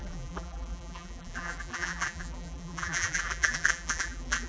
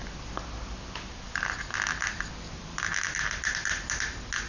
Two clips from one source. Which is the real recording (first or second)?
second